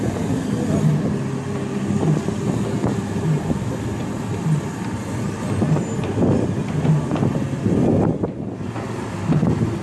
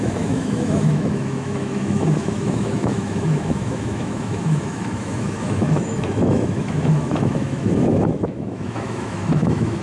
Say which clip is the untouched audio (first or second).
first